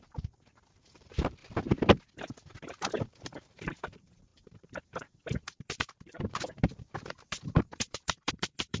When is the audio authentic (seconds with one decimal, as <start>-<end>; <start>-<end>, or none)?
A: 1.4-3.0